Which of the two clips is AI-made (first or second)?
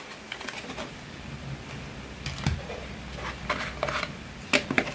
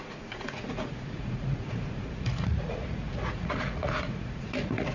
second